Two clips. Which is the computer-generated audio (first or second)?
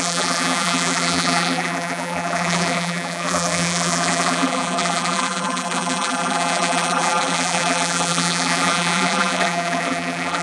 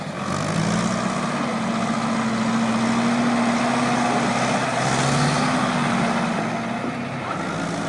first